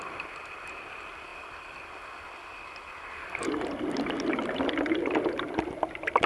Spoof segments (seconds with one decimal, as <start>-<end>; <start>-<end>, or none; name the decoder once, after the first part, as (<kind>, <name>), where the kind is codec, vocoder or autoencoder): none